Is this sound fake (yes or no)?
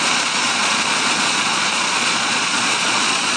yes